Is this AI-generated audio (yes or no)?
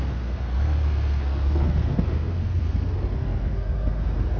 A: yes